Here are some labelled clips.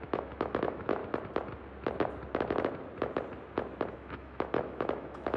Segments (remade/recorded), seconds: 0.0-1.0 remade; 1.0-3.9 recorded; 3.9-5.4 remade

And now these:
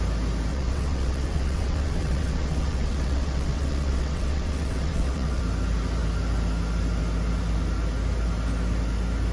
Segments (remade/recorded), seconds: 0.0-0.5 recorded; 0.5-5.4 remade; 5.4-9.3 recorded

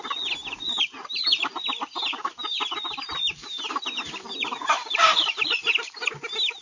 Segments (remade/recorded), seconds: 0.0-0.4 recorded; 0.4-1.6 remade; 1.6-2.1 recorded; 2.1-6.1 remade; 6.1-6.6 recorded

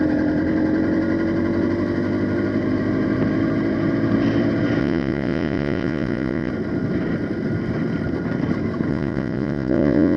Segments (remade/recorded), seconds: 0.0-4.8 recorded; 4.8-6.5 remade; 6.5-8.9 recorded; 8.9-10.2 remade

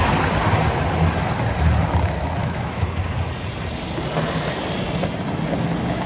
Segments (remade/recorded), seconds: 0.0-2.4 recorded; 2.4-3.0 remade; 3.0-6.1 recorded

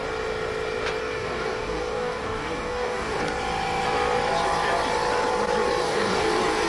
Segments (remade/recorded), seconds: 0.0-1.0 recorded; 1.0-3.2 remade; 3.2-5.8 recorded; 5.8-6.3 remade; 6.3-6.7 recorded

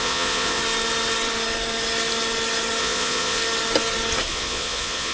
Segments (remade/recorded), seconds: 0.0-0.6 remade; 0.6-2.8 recorded; 2.8-3.4 remade; 3.4-4.3 recorded; 4.3-5.1 remade

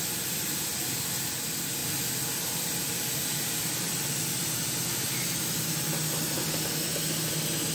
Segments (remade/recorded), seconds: 0.0-1.8 recorded; 1.8-5.4 remade; 5.4-7.7 recorded